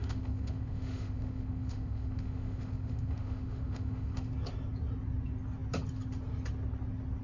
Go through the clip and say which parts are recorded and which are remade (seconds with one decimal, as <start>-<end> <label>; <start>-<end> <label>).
0.0-4.3 remade; 4.3-7.2 recorded